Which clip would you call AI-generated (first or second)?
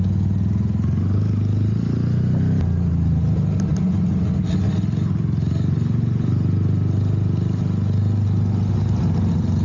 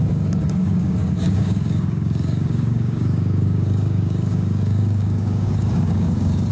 second